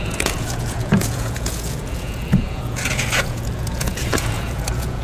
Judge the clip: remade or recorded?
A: remade